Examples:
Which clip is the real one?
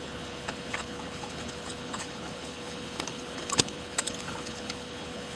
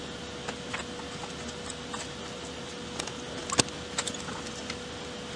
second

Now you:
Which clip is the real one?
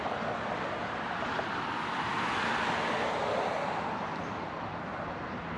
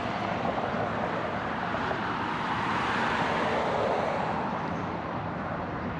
first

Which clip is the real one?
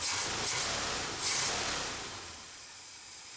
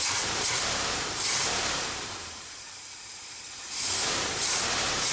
first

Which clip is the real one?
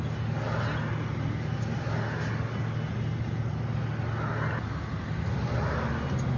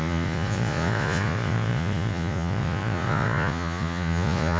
first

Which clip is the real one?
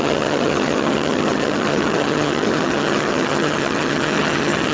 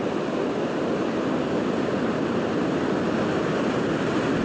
second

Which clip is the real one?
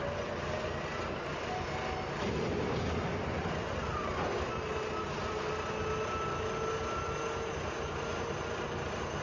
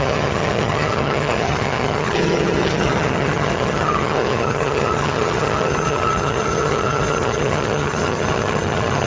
first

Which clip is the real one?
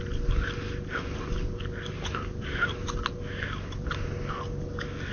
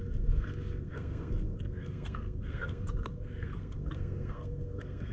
first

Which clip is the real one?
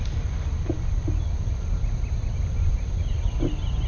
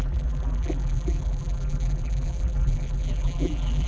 first